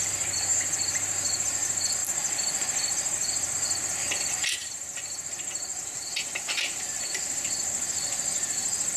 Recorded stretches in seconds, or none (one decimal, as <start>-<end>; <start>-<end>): 0.0-4.6; 5.3-5.7; 7.0-9.0